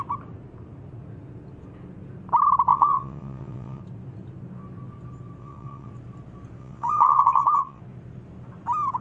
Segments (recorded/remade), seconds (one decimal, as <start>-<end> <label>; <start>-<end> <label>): 0.0-2.7 recorded; 2.7-3.8 remade; 3.8-5.4 recorded; 5.4-5.9 remade; 5.9-6.6 recorded; 6.6-7.8 remade; 7.8-9.0 recorded

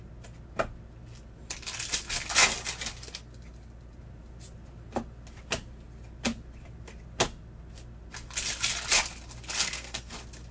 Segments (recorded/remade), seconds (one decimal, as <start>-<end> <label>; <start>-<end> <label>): 0.0-9.6 recorded; 9.6-10.1 remade; 10.1-10.5 recorded

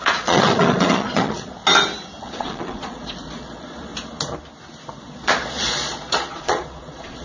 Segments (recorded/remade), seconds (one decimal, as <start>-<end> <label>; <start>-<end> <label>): 0.0-1.6 remade; 1.6-2.2 recorded; 2.2-3.9 remade; 3.9-5.0 recorded; 5.0-7.2 remade

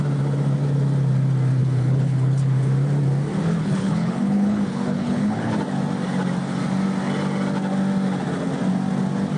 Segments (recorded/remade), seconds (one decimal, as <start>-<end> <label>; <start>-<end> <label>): 0.0-1.6 recorded; 1.6-2.7 remade; 2.7-3.5 recorded; 3.5-5.5 remade; 5.5-9.4 recorded